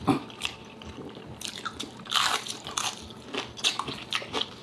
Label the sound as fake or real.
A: real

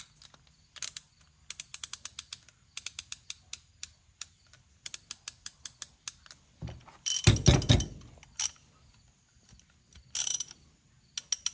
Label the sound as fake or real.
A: real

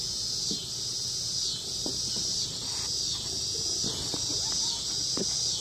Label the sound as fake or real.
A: real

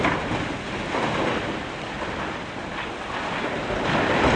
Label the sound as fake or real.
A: real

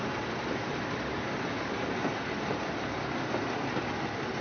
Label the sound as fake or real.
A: real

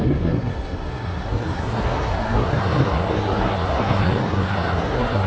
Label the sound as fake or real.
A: fake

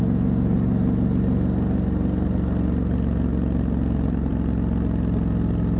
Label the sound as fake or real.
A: real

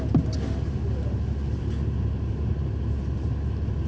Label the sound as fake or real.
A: real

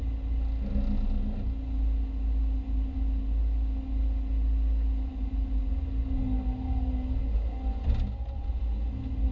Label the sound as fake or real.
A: real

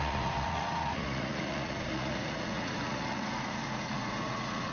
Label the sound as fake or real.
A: fake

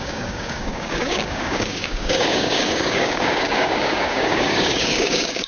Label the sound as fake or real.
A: fake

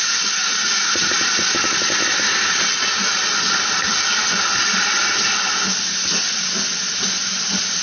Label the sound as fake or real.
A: real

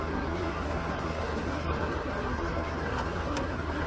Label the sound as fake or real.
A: fake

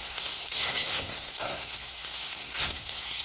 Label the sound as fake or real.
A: fake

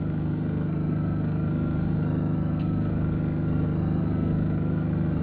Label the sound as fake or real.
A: fake